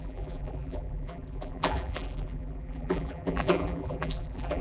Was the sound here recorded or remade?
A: remade